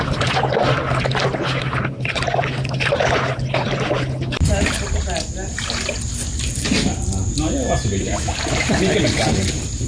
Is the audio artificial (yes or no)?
no